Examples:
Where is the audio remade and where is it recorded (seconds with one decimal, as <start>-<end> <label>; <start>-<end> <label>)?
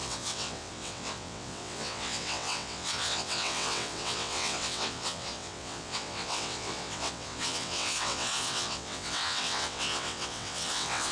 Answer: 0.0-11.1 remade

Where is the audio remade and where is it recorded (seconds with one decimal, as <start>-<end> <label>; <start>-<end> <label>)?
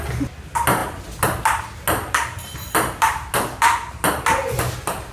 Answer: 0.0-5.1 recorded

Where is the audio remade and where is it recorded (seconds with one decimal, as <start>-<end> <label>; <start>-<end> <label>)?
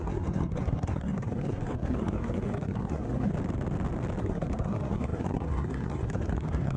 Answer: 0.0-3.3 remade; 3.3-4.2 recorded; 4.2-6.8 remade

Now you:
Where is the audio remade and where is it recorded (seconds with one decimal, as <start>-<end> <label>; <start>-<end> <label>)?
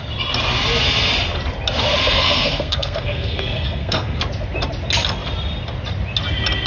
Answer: 0.0-2.0 recorded; 2.0-4.2 remade; 4.2-6.7 recorded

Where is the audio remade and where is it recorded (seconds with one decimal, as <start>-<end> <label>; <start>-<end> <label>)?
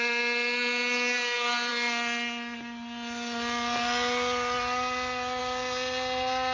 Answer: 0.0-6.5 recorded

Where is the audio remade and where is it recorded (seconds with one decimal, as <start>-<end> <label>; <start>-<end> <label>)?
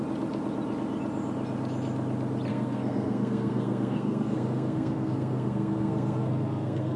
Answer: 0.0-2.5 recorded; 2.5-7.0 remade